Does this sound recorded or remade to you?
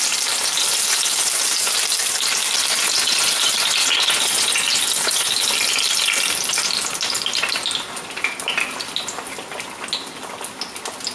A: recorded